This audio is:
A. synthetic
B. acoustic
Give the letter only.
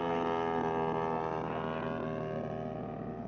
B